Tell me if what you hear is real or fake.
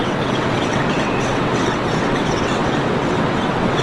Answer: fake